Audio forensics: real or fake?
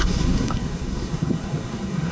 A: fake